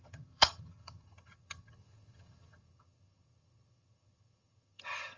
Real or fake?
fake